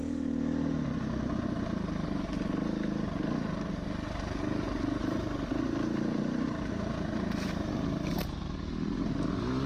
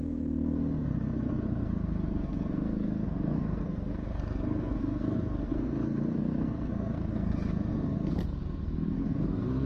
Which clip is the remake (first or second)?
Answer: second